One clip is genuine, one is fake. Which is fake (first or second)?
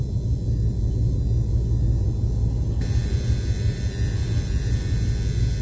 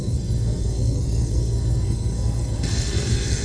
second